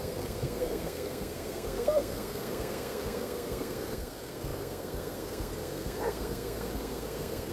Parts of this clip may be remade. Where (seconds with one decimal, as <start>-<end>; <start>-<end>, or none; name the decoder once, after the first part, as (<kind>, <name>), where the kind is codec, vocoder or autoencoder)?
0.0-7.5 (codec, SNAC)